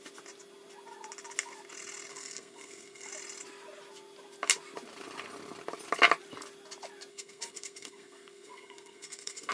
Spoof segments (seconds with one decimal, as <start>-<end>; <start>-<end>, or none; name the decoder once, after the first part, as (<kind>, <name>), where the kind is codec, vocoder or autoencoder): 2.1-3.1 (codec, SNAC); 7.1-9.5